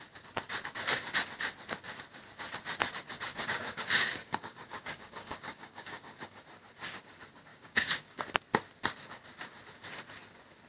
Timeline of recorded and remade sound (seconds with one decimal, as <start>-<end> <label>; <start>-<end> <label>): 0.0-3.3 recorded; 3.3-6.4 remade; 6.4-7.5 recorded; 7.5-8.2 remade; 8.2-10.7 recorded